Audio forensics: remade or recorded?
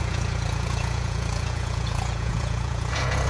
remade